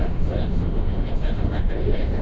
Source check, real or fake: fake